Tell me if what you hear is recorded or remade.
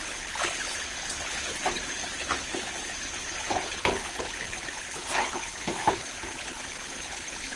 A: remade